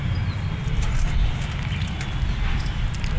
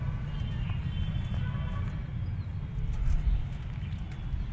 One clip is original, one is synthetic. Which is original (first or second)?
second